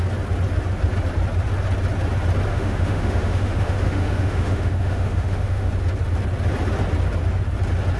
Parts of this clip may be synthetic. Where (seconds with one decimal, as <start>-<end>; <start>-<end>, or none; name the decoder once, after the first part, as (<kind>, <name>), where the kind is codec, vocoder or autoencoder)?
2.5-5.7 (autoencoder, DAC-VAE)